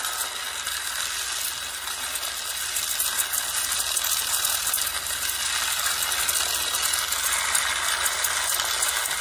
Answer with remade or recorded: recorded